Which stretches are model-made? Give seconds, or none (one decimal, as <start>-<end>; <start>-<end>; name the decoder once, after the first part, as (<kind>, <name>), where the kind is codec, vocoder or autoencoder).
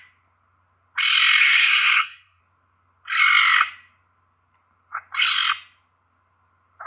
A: 1.4-2.4 (codec, SNAC)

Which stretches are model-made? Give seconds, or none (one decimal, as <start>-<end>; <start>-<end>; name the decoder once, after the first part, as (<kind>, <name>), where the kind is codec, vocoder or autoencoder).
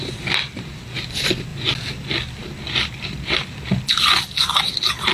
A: none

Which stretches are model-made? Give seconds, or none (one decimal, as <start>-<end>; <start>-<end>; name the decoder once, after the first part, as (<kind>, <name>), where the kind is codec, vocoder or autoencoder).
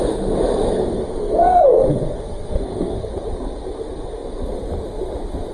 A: 0.5-3.1 (codec, SNAC)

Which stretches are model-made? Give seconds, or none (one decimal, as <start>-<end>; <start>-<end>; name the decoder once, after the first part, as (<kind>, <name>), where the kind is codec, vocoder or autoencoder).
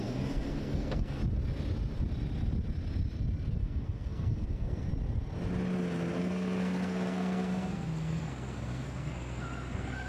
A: 0.0-1.2 (codec, SNAC); 3.6-4.9; 6.2-10.1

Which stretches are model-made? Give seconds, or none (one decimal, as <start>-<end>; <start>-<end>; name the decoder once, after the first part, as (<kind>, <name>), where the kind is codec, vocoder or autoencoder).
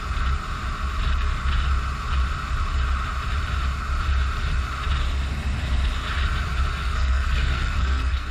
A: 6.7-8.3 (codec, SNAC)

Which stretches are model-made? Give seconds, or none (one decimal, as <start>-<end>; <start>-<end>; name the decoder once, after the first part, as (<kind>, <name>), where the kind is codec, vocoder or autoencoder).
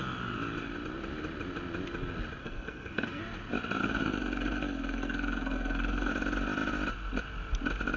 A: 2.4-3.2 (codec, SNAC); 3.8-6.1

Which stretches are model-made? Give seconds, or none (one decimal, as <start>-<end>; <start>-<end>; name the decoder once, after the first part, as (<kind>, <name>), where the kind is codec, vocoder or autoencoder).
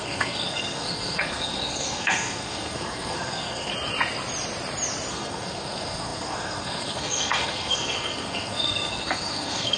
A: 0.0-3.7 (codec, SNAC); 5.1-9.8